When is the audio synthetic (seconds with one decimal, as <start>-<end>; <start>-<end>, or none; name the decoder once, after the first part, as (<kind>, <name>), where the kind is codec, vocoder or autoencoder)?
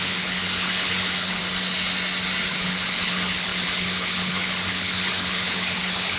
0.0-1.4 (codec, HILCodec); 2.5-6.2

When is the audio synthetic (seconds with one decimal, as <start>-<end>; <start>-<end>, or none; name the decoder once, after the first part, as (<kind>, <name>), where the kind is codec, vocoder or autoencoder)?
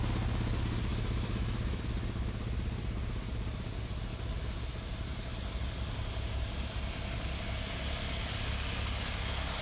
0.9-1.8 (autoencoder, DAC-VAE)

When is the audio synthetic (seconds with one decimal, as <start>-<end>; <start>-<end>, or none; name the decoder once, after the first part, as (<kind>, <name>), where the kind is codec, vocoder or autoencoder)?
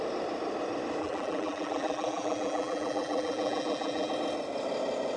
1.0-4.1 (vocoder, BigVGAN v2)